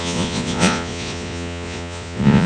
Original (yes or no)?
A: no